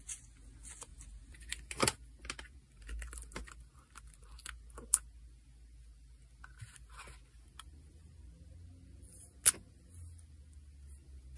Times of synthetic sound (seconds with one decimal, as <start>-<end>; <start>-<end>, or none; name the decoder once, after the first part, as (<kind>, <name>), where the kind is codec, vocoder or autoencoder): none